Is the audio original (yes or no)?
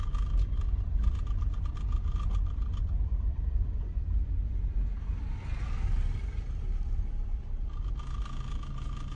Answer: yes